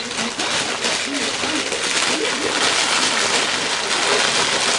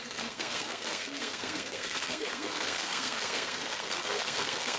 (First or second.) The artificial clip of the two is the second